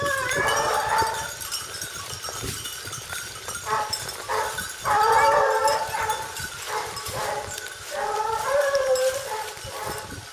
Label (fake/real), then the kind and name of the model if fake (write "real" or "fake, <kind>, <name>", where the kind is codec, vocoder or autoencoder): fake, vocoder, BigVGAN v2